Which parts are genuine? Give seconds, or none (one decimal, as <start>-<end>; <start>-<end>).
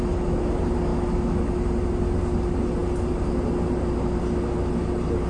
0.0-0.9; 1.5-5.3